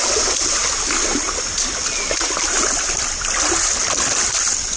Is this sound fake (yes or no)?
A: no